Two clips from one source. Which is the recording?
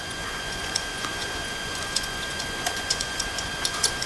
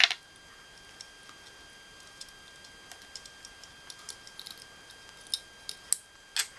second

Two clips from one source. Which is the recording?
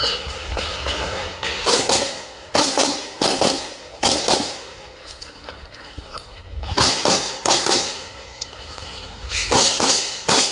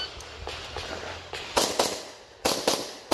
second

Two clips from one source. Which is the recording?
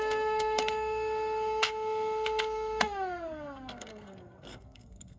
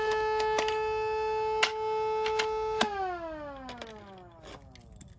second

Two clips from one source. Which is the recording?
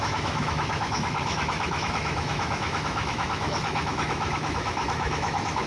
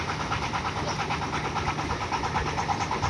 second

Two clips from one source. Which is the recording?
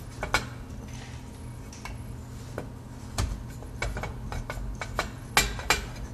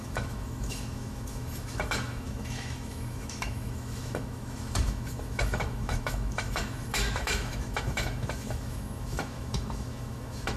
first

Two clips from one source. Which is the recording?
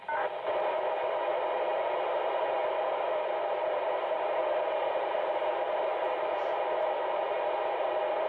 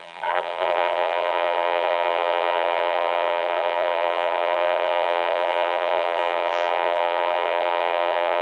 first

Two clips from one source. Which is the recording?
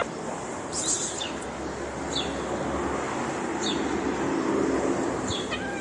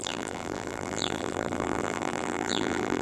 first